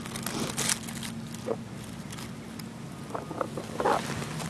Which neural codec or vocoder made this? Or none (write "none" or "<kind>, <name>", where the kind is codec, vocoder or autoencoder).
none